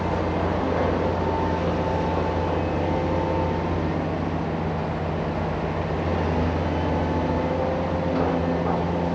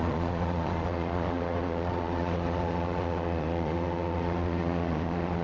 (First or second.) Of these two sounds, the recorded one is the first